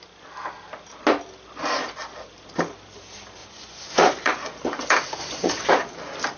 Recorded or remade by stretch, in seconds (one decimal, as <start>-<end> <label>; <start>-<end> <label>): 0.0-3.4 recorded; 3.4-4.5 remade; 4.5-5.2 recorded; 5.2-5.7 remade; 5.7-6.4 recorded